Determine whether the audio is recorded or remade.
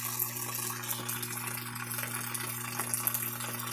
recorded